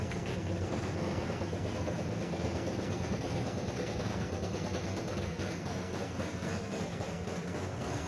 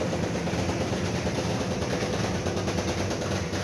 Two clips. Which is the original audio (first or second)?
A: second